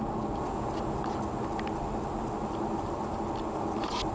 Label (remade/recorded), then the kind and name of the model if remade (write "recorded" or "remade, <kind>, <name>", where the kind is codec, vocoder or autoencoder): recorded